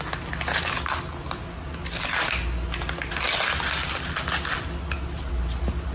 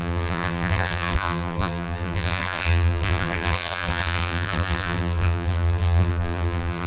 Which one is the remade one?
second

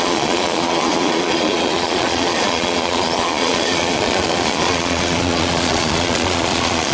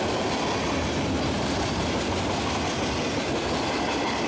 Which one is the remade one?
first